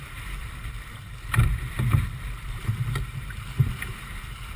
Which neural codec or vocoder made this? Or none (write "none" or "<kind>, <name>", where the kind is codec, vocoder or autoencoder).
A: vocoder, BigVGAN v2